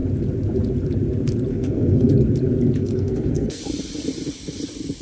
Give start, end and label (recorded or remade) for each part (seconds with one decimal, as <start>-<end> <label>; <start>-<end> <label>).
0.0-1.5 recorded; 1.5-2.1 remade; 2.1-2.8 recorded; 2.8-3.6 remade; 3.6-5.0 recorded